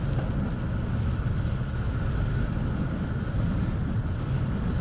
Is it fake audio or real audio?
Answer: real